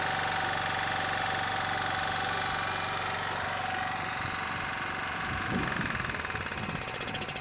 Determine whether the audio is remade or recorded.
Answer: recorded